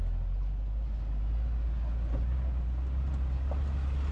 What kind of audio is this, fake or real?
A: real